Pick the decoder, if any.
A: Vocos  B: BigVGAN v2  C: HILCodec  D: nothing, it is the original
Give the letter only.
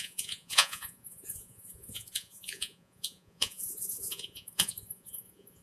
A